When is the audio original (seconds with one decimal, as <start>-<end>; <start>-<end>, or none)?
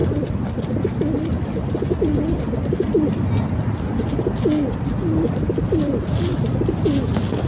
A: 0.0-7.5